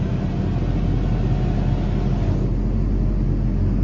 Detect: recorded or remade recorded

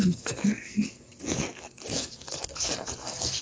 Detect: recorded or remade remade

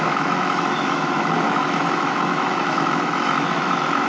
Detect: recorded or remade remade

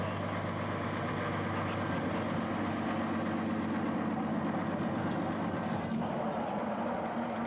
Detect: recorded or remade recorded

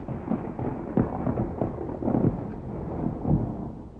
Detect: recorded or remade recorded